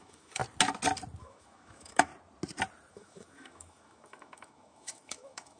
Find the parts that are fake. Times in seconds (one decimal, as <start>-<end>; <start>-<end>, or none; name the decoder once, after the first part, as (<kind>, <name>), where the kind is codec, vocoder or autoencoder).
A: 0.0-0.4 (autoencoder, DAC-VAE); 1.2-2.1; 2.9-5.6